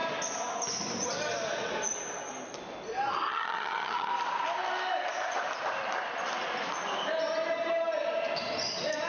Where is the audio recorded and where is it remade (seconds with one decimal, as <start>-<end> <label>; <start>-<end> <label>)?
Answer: 0.0-3.3 recorded; 3.3-4.1 remade; 4.1-9.1 recorded